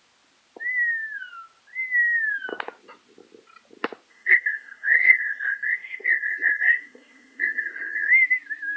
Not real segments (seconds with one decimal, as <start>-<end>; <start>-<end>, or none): 4.1-8.1